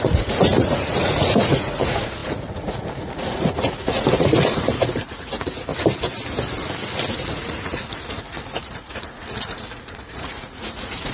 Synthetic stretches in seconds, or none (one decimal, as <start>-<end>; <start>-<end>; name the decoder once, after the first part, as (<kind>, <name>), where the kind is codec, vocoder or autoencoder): 0.0-5.7 (vocoder, Vocos); 7.1-11.1